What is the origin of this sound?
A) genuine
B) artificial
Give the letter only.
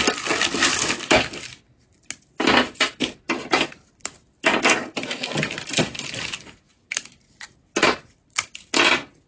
A